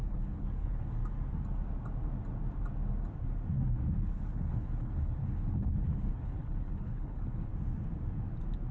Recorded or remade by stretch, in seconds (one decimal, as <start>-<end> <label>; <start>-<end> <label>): 0.0-1.0 remade; 1.0-4.0 recorded; 4.0-7.5 remade; 7.5-8.7 recorded